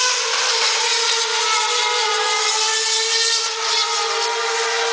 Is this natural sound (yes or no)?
yes